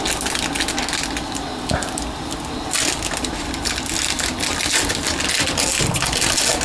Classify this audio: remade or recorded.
recorded